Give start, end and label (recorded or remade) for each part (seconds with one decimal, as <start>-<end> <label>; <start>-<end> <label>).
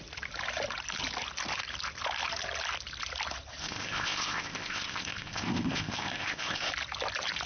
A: 0.0-3.6 recorded; 3.6-6.7 remade; 6.7-7.5 recorded